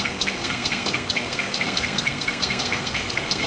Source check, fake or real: fake